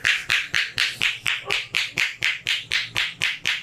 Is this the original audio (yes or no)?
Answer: no